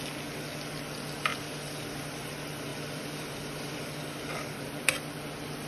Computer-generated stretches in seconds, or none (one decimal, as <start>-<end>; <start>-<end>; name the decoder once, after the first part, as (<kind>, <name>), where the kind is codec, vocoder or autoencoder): 2.7-4.9 (vocoder, BigVGAN v2)